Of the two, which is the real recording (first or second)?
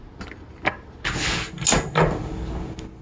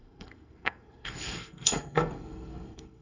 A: first